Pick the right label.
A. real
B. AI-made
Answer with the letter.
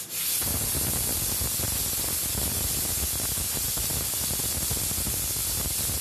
A